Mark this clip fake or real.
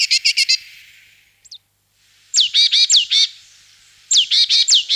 fake